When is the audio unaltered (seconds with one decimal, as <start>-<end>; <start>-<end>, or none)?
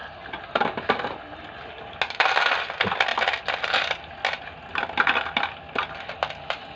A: 1.9-6.8